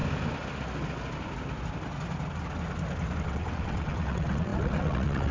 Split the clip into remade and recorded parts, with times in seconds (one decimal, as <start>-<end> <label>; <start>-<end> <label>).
0.0-3.2 recorded; 3.2-5.3 remade